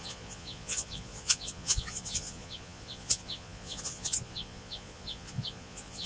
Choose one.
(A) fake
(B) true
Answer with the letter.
A